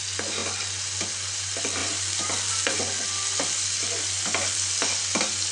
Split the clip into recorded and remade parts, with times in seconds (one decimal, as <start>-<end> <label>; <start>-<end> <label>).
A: 0.0-5.5 recorded